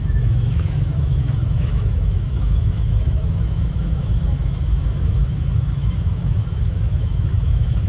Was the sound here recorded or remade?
remade